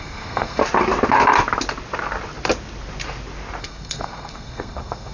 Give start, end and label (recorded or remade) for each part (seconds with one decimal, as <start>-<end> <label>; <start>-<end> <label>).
0.0-0.6 remade; 0.6-3.6 recorded; 3.6-5.1 remade